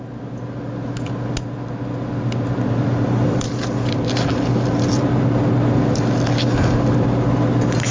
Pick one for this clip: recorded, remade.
recorded